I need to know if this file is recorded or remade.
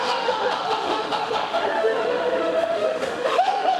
remade